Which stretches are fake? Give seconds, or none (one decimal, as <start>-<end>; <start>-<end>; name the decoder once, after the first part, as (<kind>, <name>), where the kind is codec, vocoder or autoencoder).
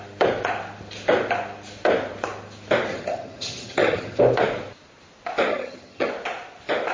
2.9-4.2 (vocoder, HiFi-GAN); 5.5-6.1